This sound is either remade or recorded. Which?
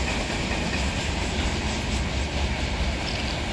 recorded